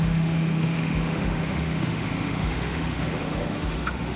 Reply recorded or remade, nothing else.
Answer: remade